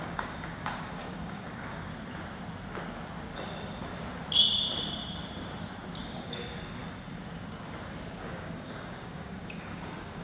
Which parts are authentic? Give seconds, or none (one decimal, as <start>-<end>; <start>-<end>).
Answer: 1.9-6.0; 6.8-8.2